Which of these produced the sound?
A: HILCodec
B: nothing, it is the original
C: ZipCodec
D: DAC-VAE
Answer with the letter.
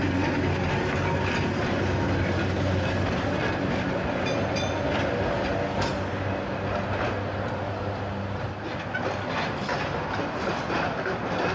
B